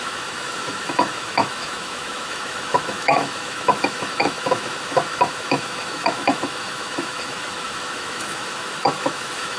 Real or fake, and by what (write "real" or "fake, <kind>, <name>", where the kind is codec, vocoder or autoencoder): fake, autoencoder, DAC-VAE